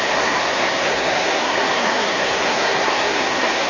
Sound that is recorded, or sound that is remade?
remade